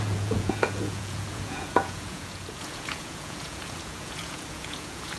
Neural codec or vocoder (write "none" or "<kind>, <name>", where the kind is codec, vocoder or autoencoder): vocoder, Vocos